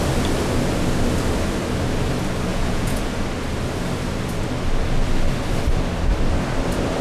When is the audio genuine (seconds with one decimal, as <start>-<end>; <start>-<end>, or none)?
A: 0.0-2.5; 3.0-7.0